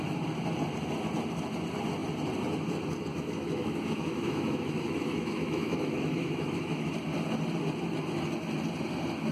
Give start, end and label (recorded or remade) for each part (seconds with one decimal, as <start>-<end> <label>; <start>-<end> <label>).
0.0-3.1 recorded; 3.1-6.9 remade; 6.9-9.3 recorded